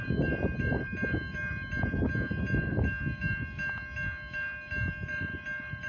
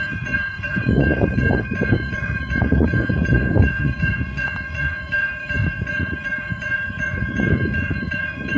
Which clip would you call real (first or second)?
first